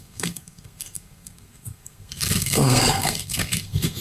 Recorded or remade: remade